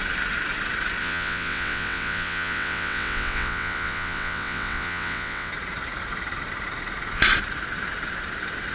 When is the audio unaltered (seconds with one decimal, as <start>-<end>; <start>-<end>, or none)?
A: 0.0-1.0; 5.5-8.7